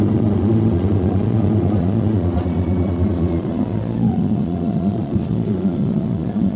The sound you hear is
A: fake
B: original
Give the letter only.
A